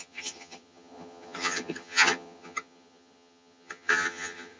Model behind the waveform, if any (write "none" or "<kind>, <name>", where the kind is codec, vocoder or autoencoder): vocoder, HiFi-GAN